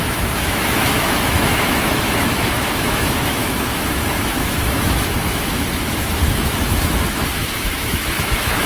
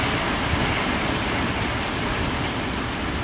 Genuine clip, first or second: second